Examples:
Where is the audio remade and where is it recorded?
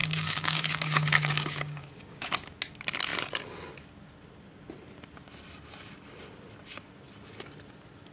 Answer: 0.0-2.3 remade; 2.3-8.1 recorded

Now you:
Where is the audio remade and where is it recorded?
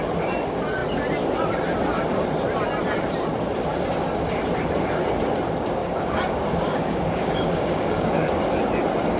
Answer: 0.0-5.8 recorded; 5.8-8.4 remade; 8.4-9.2 recorded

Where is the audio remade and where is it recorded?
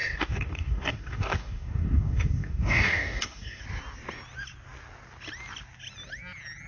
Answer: 0.0-3.6 remade; 3.6-6.7 recorded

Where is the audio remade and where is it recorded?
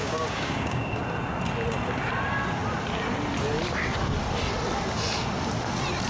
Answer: 0.0-1.0 remade; 1.0-6.1 recorded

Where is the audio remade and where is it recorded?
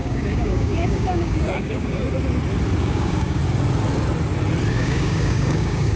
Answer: 0.0-2.0 remade; 2.0-2.8 recorded; 2.8-3.4 remade; 3.4-4.7 recorded; 4.7-6.0 remade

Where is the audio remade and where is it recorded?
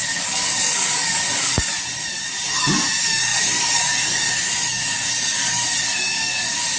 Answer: 0.0-1.7 remade; 1.7-2.5 recorded; 2.5-6.8 remade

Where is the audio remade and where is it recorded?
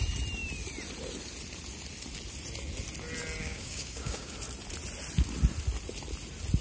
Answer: 0.0-3.4 recorded; 3.4-4.3 remade; 4.3-6.6 recorded